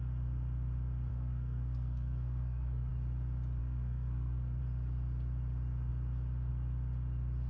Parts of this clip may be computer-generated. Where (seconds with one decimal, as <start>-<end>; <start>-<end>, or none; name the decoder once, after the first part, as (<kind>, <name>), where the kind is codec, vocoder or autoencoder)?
1.1-2.9 (codec, SNAC); 3.6-4.6